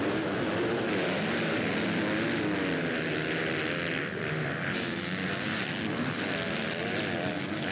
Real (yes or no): yes